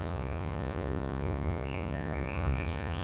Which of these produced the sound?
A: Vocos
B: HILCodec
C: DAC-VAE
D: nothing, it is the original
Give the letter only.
A